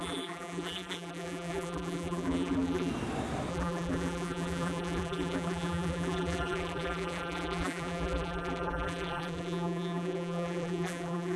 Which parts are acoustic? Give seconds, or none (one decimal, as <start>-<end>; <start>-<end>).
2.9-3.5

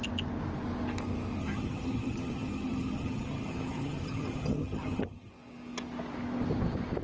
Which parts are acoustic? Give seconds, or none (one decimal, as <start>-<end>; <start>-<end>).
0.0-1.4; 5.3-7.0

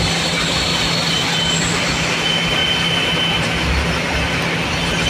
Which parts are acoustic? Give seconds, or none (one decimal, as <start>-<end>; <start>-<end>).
0.0-0.7; 1.8-5.1